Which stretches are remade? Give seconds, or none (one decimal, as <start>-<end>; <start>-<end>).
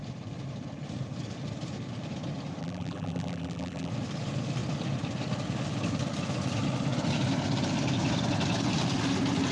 2.6-3.9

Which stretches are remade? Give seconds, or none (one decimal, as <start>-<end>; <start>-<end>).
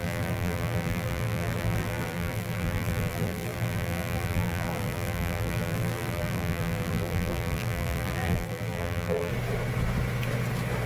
0.0-9.3